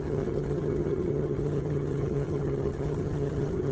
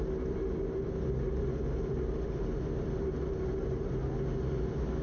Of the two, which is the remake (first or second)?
first